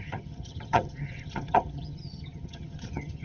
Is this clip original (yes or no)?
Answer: no